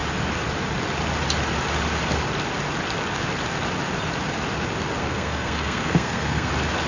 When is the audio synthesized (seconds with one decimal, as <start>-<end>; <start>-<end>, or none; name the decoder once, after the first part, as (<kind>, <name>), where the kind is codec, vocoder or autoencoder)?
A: 5.0-6.5 (codec, SNAC)